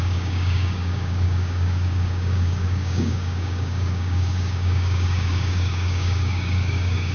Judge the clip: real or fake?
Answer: fake